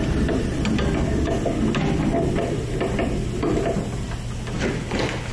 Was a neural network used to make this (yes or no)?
no